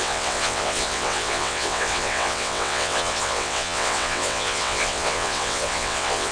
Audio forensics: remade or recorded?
remade